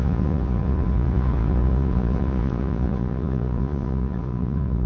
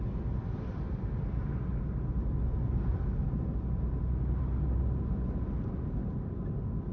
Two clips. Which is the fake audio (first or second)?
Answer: first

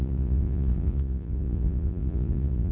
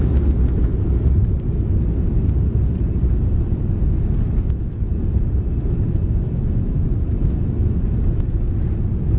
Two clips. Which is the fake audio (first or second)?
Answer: first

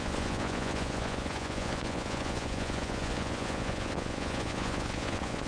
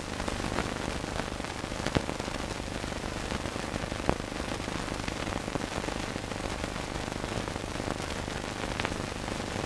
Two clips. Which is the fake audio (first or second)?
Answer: first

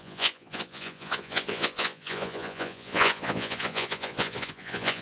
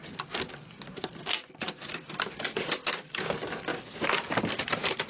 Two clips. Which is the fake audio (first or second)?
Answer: first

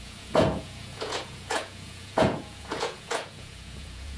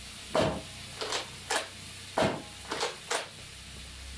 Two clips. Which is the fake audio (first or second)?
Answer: first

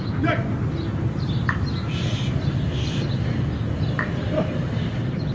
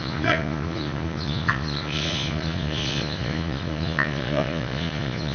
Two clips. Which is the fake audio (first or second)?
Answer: second